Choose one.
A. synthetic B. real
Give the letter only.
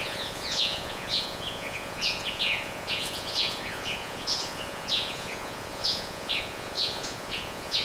A